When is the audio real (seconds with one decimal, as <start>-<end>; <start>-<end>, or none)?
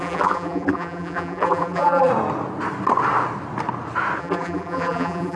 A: 2.1-4.2